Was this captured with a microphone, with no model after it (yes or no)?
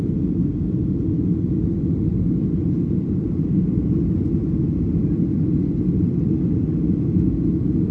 yes